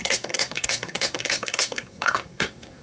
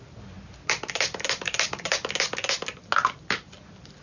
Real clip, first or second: second